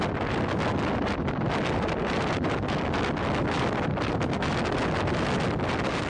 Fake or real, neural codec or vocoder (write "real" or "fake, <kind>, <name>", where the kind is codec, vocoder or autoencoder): real